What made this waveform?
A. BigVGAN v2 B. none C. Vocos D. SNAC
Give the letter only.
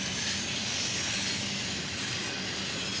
B